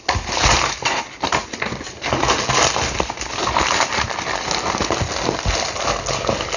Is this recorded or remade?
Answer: recorded